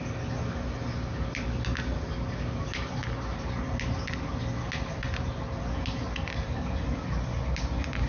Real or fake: real